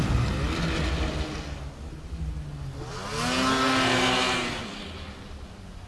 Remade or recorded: recorded